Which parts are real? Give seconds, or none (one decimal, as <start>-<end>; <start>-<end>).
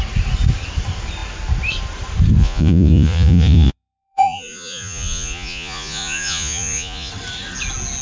0.0-2.4; 7.1-8.0